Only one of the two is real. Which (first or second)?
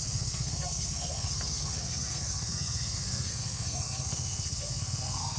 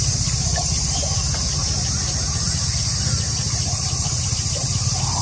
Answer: second